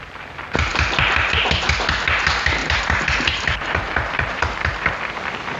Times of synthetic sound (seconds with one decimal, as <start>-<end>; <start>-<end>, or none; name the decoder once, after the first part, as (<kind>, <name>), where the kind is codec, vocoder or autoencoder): 2.6-4.9 (vocoder, BigVGAN v2)